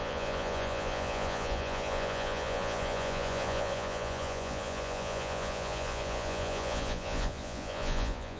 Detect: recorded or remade remade